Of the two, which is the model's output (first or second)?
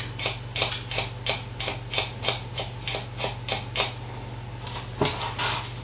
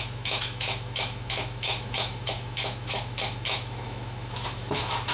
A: second